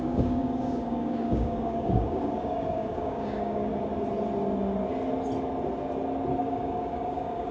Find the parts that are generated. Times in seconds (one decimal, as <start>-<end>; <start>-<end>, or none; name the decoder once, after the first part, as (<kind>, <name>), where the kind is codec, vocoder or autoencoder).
0.0-3.7 (codec, DAC); 6.4-7.5